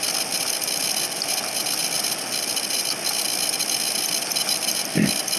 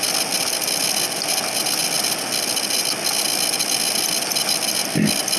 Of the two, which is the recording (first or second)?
second